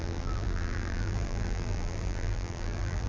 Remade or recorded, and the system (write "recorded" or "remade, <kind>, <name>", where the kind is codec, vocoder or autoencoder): remade, vocoder, BigVGAN v2